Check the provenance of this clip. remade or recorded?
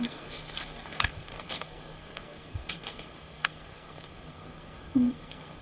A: remade